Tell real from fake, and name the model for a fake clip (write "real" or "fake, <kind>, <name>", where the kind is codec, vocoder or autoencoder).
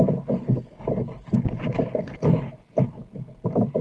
real